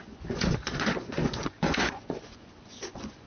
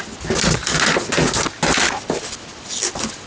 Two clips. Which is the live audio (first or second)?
second